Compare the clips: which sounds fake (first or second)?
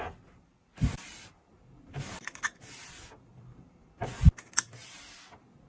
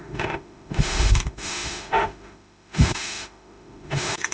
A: second